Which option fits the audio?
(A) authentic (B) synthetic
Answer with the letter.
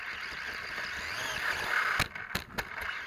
A